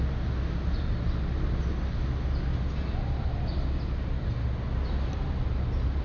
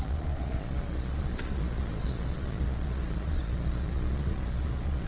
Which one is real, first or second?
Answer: first